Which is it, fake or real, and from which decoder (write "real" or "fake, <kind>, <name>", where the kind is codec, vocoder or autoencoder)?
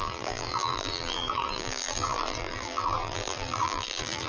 fake, vocoder, BigVGAN v2